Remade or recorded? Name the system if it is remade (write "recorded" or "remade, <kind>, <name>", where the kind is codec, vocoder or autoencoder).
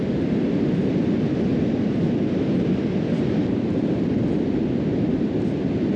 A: recorded